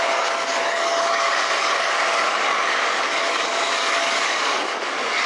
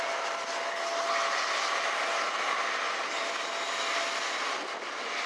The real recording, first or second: second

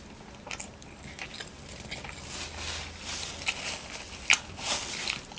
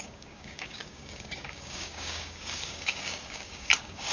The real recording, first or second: first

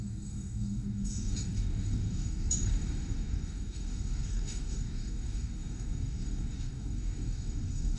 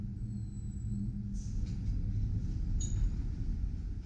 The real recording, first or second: second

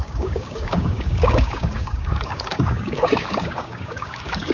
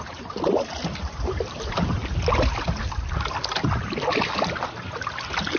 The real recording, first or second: second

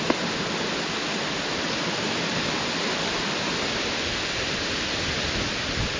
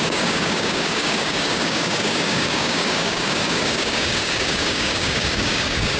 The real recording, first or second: first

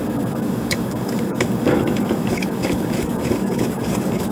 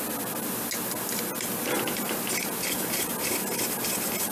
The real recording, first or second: second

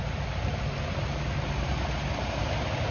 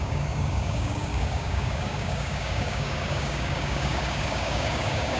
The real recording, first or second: first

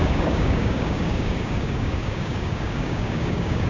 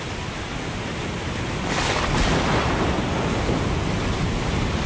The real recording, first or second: second